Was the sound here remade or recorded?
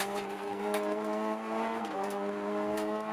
remade